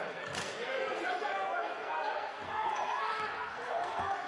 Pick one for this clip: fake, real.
fake